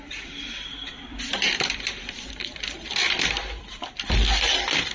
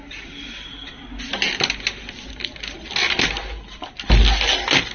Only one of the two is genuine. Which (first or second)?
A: second